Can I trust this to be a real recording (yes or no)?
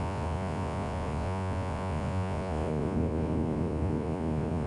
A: no